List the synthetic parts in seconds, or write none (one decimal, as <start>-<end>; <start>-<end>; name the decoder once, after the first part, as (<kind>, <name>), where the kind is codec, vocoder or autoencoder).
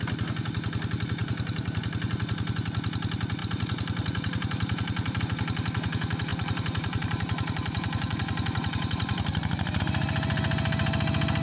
1.2-1.8 (vocoder, BigVGAN v2); 3.4-5.2; 6.3-9.8